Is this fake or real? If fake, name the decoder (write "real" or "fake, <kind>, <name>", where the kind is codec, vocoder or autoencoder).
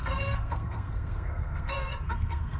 fake, codec, SNAC